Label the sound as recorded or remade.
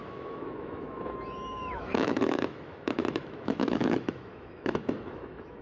remade